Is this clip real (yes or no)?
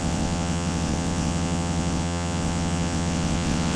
no